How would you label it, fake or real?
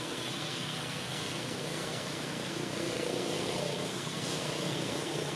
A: fake